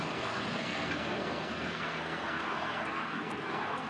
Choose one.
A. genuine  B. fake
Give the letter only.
B